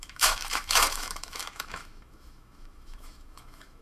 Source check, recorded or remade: remade